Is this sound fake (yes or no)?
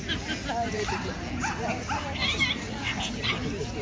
no